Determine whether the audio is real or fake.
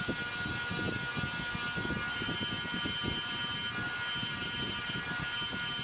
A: real